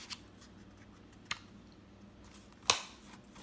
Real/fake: real